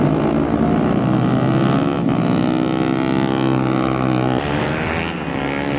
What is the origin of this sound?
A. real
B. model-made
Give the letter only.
A